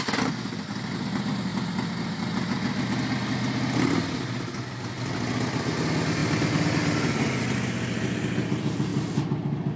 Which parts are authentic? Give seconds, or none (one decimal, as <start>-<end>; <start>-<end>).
0.0-9.8